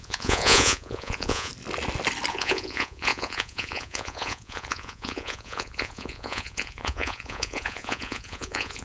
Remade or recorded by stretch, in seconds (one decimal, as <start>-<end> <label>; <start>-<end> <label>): 0.0-1.5 remade; 1.5-2.3 recorded; 2.3-8.8 remade